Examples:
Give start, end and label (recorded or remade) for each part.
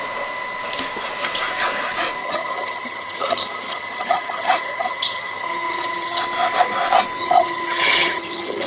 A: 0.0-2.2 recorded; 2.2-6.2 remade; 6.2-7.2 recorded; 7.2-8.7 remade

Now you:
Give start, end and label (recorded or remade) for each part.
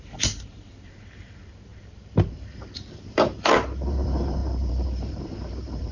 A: 0.0-5.9 remade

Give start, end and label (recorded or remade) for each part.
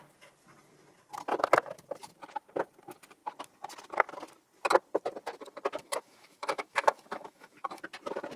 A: 0.0-5.8 recorded; 5.8-7.8 remade; 7.8-8.4 recorded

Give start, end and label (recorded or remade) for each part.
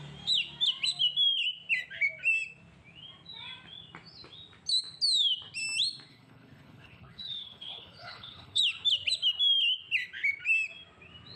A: 0.0-6.1 recorded; 6.1-8.6 remade; 8.6-11.4 recorded